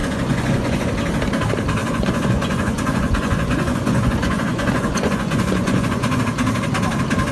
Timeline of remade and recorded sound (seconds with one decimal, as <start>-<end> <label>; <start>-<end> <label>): 0.0-0.9 remade; 0.9-1.8 recorded; 1.8-6.2 remade; 6.2-7.3 recorded